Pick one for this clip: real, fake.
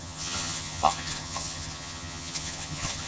fake